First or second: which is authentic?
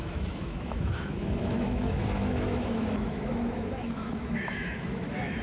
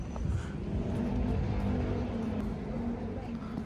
second